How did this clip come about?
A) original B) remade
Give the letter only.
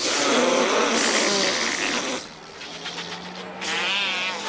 A